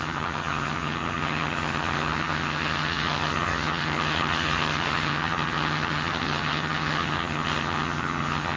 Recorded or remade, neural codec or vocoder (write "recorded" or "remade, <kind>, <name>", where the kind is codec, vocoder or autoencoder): remade, vocoder, HiFi-GAN